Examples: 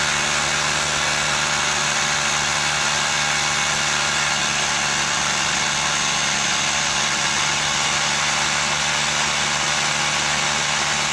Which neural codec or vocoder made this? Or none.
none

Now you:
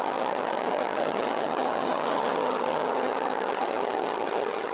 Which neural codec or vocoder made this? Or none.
vocoder, HiFi-GAN